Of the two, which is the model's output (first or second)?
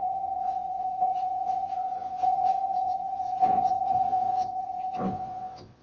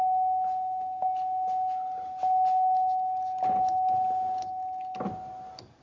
first